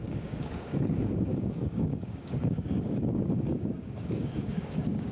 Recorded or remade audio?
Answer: remade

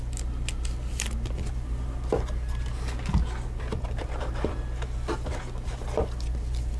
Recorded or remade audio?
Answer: recorded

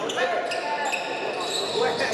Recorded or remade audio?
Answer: recorded